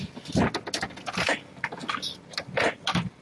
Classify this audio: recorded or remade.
recorded